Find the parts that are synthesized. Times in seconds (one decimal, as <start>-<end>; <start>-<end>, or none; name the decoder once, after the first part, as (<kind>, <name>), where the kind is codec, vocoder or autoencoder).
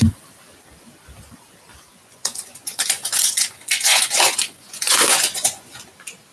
1.9-5.7 (vocoder, Vocos)